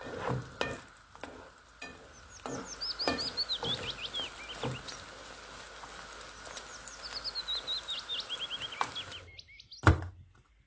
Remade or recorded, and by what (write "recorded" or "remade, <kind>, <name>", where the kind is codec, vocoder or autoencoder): recorded